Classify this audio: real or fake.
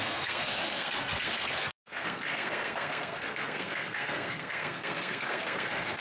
fake